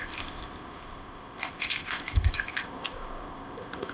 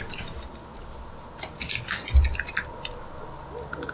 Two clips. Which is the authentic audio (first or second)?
second